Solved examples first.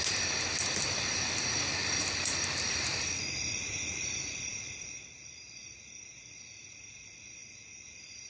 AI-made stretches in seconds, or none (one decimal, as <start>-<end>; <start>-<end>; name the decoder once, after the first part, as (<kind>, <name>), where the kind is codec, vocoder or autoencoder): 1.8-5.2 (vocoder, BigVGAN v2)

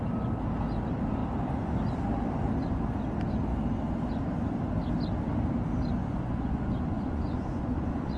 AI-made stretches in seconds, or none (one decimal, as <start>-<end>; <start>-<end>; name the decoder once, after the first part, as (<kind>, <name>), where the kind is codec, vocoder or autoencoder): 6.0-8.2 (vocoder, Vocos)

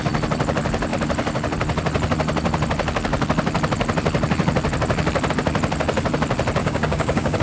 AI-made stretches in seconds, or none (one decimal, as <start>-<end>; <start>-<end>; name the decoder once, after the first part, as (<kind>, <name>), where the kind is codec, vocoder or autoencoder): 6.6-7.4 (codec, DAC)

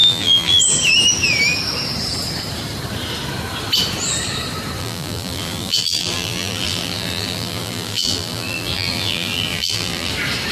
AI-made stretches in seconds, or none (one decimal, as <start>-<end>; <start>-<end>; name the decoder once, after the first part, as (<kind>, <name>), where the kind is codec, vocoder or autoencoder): 0.0-0.6 (vocoder, BigVGAN v2); 4.8-10.1

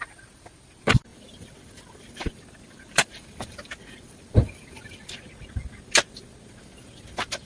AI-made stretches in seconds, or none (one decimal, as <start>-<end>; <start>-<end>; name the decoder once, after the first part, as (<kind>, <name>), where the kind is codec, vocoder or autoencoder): 1.1-5.1 (vocoder, BigVGAN v2)

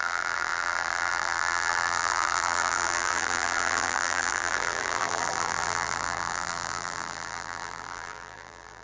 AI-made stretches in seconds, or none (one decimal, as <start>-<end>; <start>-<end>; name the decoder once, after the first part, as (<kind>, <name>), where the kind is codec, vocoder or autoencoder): 0.0-8.8 (vocoder, BigVGAN v2)

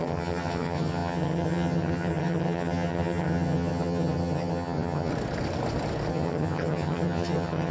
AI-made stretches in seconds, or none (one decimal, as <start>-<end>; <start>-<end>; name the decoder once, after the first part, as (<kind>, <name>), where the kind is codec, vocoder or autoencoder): 0.0-5.1 (vocoder, HiFi-GAN); 6.1-7.7